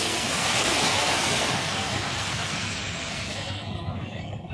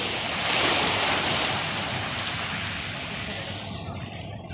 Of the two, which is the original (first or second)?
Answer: second